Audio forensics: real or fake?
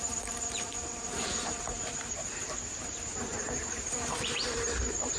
fake